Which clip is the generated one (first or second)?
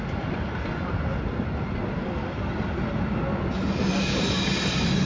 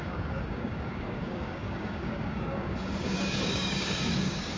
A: second